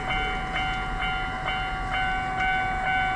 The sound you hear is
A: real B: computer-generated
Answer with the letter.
A